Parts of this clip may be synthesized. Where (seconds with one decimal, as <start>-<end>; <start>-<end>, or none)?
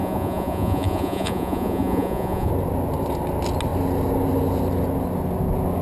0.0-2.5